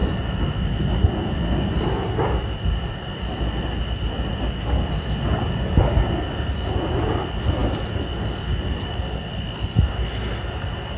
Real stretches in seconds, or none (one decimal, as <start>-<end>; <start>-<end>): 3.4-7.6; 9.9-11.0